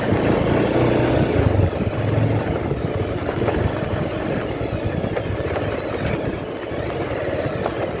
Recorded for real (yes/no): yes